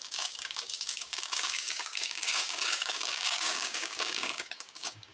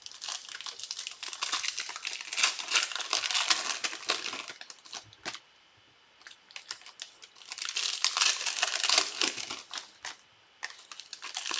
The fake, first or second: first